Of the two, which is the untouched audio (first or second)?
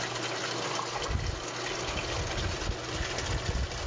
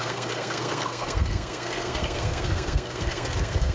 first